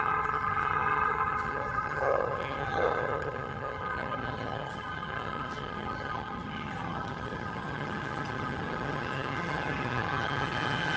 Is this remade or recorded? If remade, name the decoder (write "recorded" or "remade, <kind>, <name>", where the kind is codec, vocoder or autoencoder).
remade, vocoder, HiFi-GAN